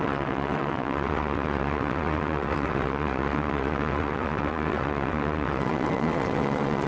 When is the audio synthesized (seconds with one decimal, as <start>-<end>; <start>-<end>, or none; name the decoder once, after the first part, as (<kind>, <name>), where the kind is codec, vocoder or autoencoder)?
0.0-6.9 (vocoder, WaveNeXt)